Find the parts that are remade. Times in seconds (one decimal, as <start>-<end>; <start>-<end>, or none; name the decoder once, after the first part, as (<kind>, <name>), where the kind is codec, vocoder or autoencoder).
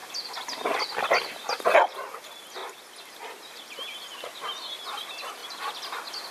0.0-2.6 (vocoder, BigVGAN v2); 3.1-6.3